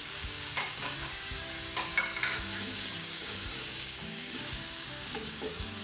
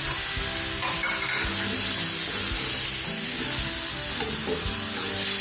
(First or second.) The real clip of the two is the second